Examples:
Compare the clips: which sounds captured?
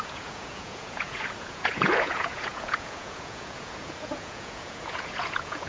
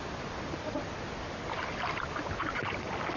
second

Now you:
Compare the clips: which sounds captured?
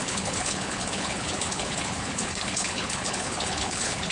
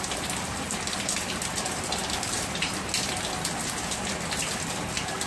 second